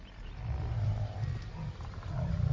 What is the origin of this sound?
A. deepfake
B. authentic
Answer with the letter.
B